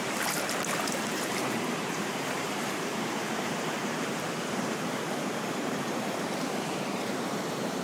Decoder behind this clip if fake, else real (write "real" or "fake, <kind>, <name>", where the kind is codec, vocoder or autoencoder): fake, vocoder, BigVGAN v2